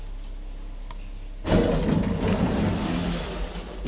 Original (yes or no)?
yes